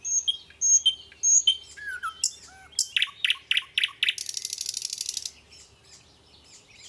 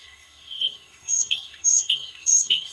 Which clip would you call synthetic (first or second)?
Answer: second